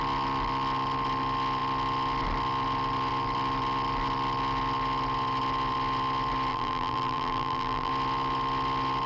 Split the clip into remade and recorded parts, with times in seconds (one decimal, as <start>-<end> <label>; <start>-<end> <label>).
0.0-6.5 recorded; 6.5-7.9 remade; 7.9-9.1 recorded